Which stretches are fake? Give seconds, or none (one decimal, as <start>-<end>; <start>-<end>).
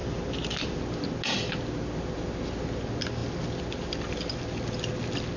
0.0-0.8